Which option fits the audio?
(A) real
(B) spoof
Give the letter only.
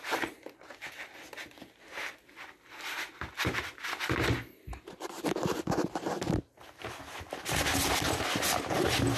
A